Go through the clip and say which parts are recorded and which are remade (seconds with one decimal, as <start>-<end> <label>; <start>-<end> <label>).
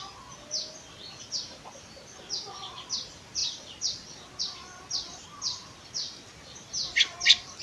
0.0-7.6 recorded